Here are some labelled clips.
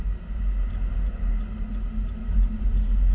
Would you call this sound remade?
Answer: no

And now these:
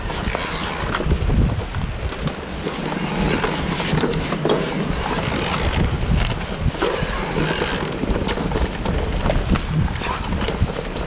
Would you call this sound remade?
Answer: no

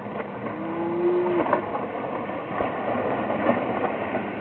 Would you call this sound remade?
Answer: no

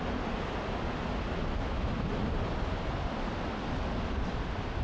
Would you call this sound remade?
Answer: no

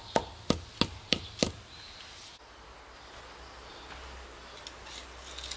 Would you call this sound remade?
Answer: no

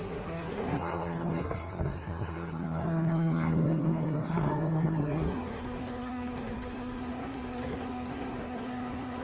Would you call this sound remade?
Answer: yes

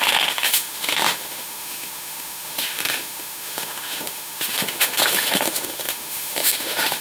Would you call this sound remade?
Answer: yes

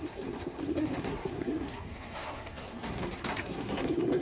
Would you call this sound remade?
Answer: yes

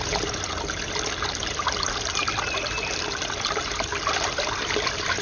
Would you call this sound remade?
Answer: no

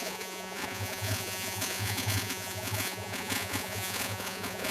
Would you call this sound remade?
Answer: yes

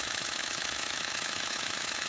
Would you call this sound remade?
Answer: yes